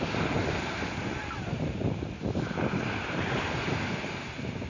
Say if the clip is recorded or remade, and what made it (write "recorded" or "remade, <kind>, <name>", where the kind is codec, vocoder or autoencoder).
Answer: recorded